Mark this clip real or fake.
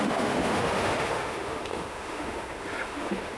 fake